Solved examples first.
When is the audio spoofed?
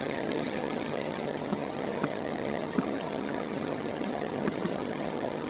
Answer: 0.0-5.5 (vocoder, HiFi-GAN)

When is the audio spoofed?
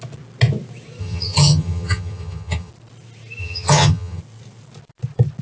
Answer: 1.0-2.7 (vocoder, HiFi-GAN); 3.4-4.2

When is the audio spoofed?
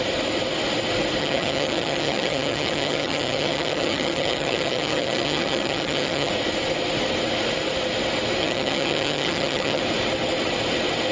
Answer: 1.2-6.3 (vocoder, HiFi-GAN); 8.4-9.8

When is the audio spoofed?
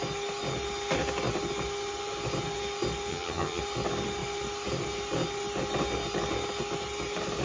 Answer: 3.1-3.6 (vocoder, HiFi-GAN)